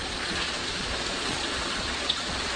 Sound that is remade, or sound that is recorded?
remade